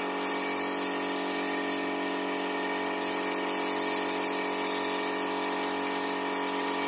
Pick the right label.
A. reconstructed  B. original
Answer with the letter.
B